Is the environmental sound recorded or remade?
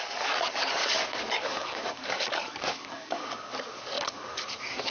remade